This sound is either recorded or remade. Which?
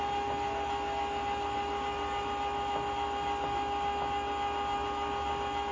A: recorded